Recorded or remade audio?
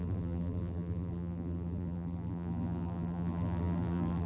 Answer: remade